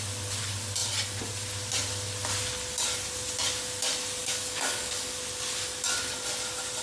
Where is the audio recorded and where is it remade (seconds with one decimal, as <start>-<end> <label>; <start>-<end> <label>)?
0.0-4.2 recorded; 4.2-5.2 remade; 5.2-6.8 recorded